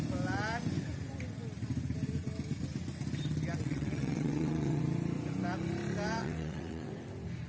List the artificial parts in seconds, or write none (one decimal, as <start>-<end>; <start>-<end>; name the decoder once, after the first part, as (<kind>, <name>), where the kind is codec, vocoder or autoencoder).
3.6-4.8 (vocoder, WaveNeXt); 6.2-6.9

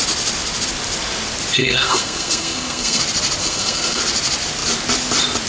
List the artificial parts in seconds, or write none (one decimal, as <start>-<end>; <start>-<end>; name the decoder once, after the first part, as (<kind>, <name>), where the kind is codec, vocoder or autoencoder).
1.6-3.0 (codec, SNAC); 3.4-4.0